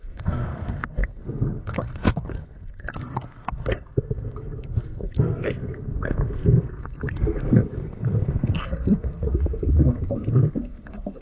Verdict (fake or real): fake